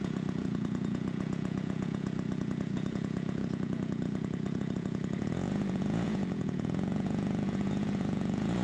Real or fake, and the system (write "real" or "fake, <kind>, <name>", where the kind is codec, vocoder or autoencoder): fake, vocoder, Vocos